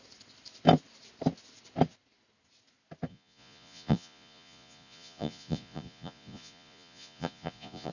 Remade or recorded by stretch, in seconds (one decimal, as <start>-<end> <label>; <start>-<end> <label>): 0.0-3.1 recorded; 3.1-7.9 remade